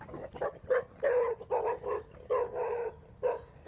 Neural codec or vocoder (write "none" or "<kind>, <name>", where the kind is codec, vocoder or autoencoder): none